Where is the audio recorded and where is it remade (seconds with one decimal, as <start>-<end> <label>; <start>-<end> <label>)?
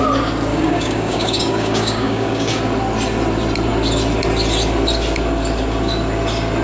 0.0-0.5 recorded; 0.5-2.6 remade; 2.6-6.6 recorded